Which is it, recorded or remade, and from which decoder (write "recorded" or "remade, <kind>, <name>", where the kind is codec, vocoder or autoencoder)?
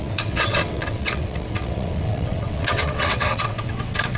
remade, vocoder, WaveNeXt